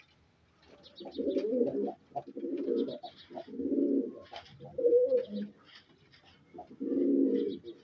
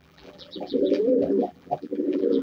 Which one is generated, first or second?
second